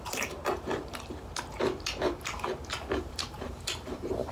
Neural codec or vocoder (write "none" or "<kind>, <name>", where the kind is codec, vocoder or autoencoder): vocoder, BigVGAN v2